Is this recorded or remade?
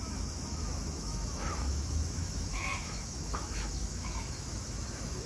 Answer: remade